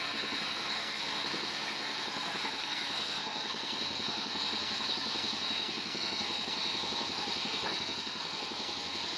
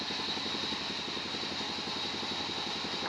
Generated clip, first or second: first